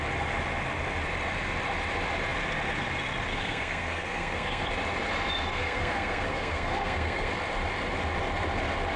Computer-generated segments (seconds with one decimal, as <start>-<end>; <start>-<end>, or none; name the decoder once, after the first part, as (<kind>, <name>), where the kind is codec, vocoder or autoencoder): 3.3-4.7 (codec, SNAC); 5.5-7.3